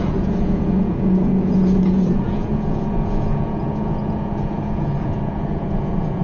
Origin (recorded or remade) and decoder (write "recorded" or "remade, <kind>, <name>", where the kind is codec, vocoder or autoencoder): remade, vocoder, Vocos